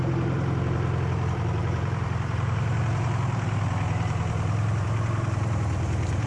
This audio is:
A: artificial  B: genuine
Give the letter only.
A